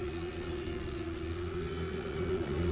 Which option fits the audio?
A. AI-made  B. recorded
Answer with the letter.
A